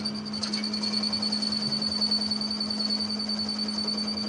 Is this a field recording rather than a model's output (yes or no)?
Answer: yes